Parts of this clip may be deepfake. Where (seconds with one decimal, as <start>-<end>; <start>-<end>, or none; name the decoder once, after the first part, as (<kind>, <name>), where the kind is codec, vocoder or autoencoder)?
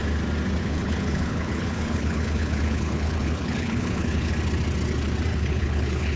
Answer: 0.6-4.3 (codec, HILCodec); 5.3-6.2